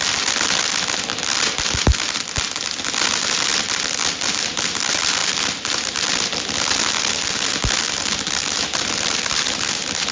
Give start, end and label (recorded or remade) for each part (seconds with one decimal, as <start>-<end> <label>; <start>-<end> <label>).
0.0-1.1 recorded; 1.1-2.3 remade; 2.3-3.5 recorded; 3.5-4.5 remade; 4.5-10.1 recorded